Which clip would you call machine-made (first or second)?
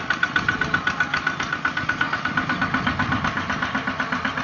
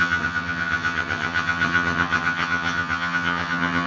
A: second